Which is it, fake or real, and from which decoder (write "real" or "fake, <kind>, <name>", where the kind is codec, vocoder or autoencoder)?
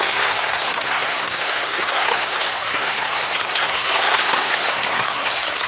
fake, codec, SNAC